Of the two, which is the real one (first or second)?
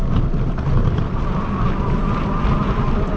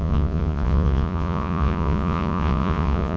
first